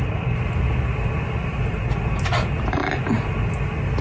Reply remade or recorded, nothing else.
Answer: recorded